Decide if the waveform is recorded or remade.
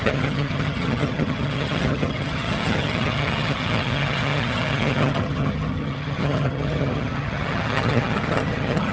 remade